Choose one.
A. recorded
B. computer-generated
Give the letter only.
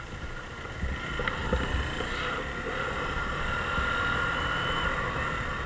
A